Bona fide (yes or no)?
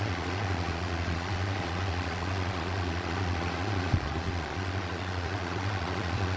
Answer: no